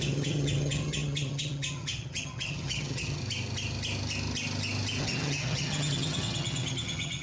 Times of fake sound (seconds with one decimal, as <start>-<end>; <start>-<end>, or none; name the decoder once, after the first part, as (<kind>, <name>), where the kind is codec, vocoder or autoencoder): 0.0-3.2 (vocoder, HiFi-GAN); 5.0-7.2